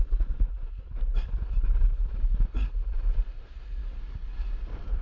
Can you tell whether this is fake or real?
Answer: real